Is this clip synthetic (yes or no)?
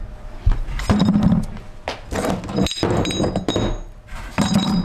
no